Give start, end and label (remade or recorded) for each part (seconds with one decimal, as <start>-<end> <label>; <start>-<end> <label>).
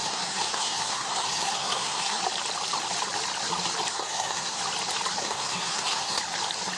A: 0.0-2.2 remade; 2.2-3.9 recorded; 3.9-4.6 remade; 4.6-5.2 recorded; 5.2-6.2 remade; 6.2-6.8 recorded